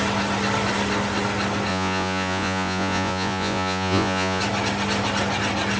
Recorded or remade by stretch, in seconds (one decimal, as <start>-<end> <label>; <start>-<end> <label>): 0.0-1.7 recorded; 1.7-4.4 remade; 4.4-5.8 recorded